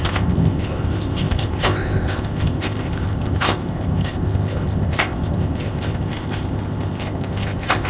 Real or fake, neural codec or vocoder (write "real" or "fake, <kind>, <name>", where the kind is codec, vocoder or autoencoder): fake, codec, ZipCodec